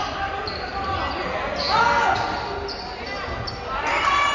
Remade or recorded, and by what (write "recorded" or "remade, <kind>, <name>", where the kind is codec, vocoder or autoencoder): recorded